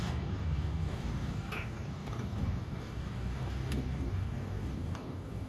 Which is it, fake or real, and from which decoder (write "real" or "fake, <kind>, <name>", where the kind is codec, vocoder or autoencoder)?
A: fake, codec, DAC